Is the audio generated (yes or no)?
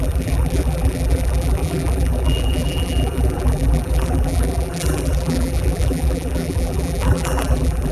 yes